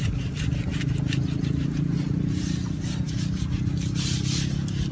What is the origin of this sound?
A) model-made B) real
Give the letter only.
B